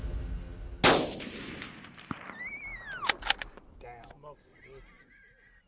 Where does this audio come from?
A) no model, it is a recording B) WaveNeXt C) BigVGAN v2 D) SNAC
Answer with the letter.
A